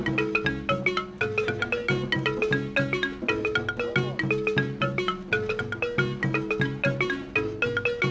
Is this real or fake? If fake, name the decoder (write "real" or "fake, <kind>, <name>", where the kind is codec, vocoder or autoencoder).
real